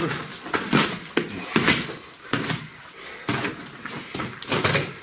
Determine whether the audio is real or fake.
real